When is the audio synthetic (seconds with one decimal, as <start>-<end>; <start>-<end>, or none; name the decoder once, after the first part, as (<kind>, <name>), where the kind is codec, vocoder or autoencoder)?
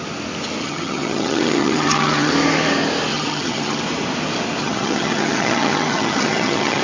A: 0.6-2.3 (vocoder, HiFi-GAN); 3.1-3.8; 4.6-6.8